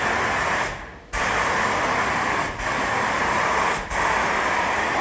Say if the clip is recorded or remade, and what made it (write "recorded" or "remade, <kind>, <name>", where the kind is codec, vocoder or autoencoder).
recorded